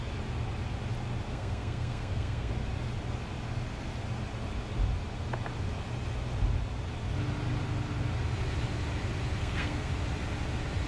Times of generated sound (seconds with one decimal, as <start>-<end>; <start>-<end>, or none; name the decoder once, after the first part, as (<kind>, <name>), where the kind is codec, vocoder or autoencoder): 1.3-2.5 (codec, SNAC); 9.4-9.9